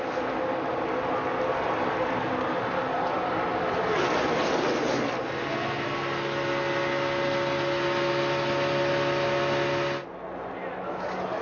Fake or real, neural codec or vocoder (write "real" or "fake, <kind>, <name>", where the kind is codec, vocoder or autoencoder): real